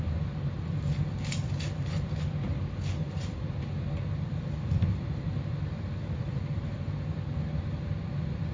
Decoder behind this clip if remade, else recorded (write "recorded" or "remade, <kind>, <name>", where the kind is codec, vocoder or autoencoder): remade, vocoder, BigVGAN v2